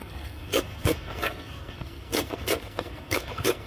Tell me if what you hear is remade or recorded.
remade